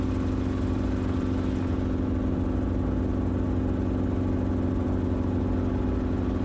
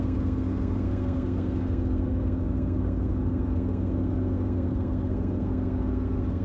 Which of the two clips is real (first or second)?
first